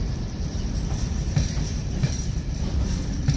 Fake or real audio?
fake